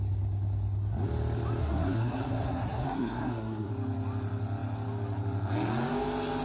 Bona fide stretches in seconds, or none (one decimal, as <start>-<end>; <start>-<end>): 0.0-1.6; 3.7-6.4